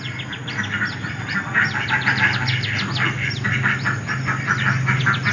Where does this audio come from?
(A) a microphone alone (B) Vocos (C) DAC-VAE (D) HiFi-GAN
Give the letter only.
A